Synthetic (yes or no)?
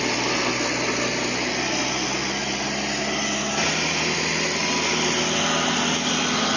no